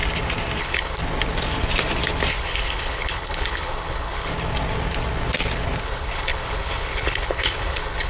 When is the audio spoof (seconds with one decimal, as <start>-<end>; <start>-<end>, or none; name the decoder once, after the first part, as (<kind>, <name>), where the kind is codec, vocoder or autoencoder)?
0.6-1.0 (codec, HILCodec); 2.3-4.3; 5.8-8.1